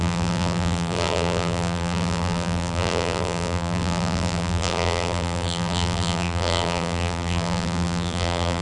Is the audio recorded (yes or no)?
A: no